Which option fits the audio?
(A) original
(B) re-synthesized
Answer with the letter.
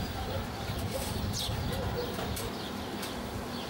A